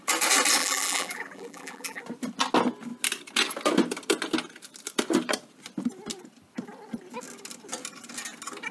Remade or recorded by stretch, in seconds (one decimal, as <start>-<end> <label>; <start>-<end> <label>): 0.0-0.6 recorded; 0.6-2.0 remade; 2.0-8.7 recorded